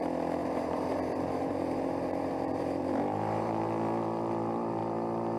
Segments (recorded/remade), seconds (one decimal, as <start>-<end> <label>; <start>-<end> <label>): 0.0-0.4 recorded; 0.4-3.6 remade; 3.6-5.4 recorded